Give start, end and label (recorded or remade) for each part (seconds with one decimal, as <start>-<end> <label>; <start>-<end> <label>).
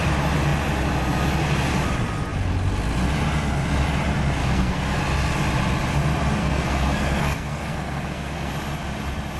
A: 0.0-4.4 recorded; 4.4-5.0 remade; 5.0-6.4 recorded; 6.4-8.5 remade; 8.5-9.4 recorded